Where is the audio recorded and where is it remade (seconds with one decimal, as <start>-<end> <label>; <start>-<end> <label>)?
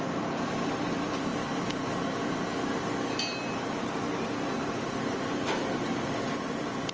0.0-6.9 recorded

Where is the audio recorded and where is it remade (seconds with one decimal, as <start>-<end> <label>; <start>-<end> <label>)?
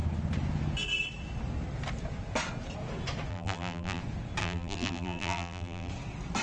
0.0-3.3 recorded; 3.3-4.0 remade; 4.0-4.4 recorded; 4.4-5.9 remade; 5.9-6.4 recorded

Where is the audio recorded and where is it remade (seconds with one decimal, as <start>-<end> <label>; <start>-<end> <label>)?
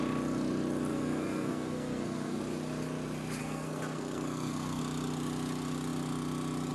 0.0-0.9 recorded; 0.9-2.4 remade; 2.4-3.4 recorded; 3.4-4.8 remade; 4.8-6.7 recorded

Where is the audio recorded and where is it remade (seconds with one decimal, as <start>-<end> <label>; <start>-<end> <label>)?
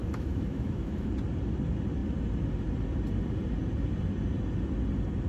0.0-1.1 remade; 1.1-5.3 recorded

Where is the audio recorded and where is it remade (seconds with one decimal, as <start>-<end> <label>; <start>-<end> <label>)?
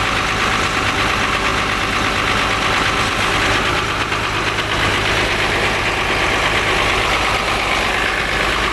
0.0-8.7 recorded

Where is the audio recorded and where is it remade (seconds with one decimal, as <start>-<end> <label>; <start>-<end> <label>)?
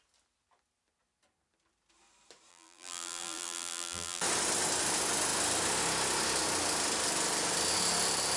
0.0-2.5 recorded; 2.5-4.2 remade; 4.2-8.4 recorded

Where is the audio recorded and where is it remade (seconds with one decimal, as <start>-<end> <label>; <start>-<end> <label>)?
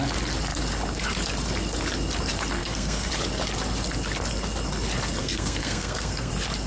0.0-2.6 recorded; 2.6-3.1 remade; 3.1-5.2 recorded; 5.2-6.3 remade; 6.3-6.7 recorded